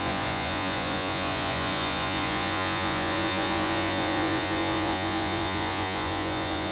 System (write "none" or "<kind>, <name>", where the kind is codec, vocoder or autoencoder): vocoder, Vocos